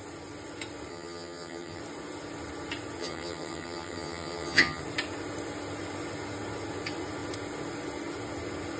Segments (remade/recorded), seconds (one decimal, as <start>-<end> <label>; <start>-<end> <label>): 0.0-0.9 recorded; 0.9-1.8 remade; 1.8-3.0 recorded; 3.0-4.8 remade; 4.8-8.8 recorded

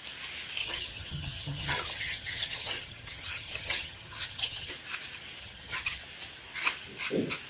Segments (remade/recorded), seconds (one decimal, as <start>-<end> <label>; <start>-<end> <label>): 0.0-0.6 recorded; 0.6-4.7 remade; 4.7-5.4 recorded; 5.4-6.0 remade; 6.0-7.5 recorded

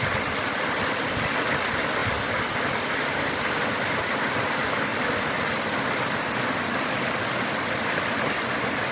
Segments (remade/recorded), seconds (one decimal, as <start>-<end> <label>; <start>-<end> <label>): 0.0-8.9 recorded

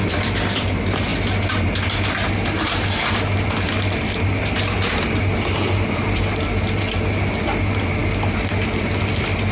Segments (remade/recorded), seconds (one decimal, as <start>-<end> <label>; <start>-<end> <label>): 0.0-9.5 recorded

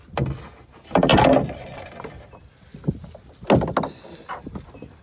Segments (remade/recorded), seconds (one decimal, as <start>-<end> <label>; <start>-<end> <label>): 0.0-5.0 recorded